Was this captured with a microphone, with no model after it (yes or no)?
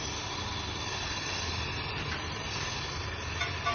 yes